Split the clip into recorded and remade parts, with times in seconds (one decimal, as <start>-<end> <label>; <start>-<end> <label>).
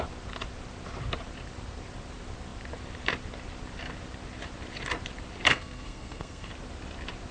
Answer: 0.0-5.5 recorded; 5.5-6.5 remade; 6.5-7.3 recorded